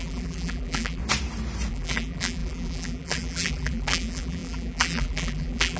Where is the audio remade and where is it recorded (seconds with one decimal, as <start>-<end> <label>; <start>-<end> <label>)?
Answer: 0.0-1.0 remade; 1.0-1.7 recorded; 1.7-5.8 remade